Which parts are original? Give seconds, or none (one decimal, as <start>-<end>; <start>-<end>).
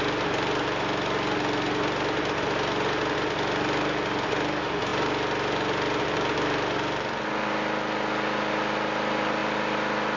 0.0-10.2